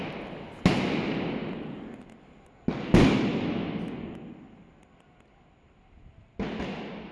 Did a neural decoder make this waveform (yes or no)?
no